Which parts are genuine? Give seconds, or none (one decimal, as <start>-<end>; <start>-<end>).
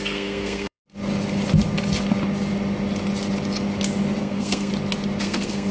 0.8-4.2; 4.7-5.2